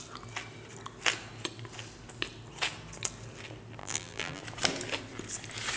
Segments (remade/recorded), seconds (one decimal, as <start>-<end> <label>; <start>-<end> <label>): 0.0-3.8 recorded; 3.8-4.4 remade; 4.4-5.8 recorded